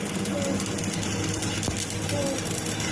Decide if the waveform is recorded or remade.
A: recorded